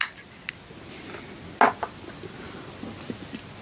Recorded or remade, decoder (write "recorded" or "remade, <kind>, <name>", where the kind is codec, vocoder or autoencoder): recorded